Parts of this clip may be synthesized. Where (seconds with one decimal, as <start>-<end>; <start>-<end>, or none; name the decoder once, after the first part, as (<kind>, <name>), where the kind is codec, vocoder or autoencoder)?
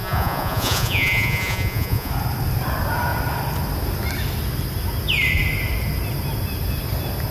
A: 0.0-2.1 (vocoder, Vocos)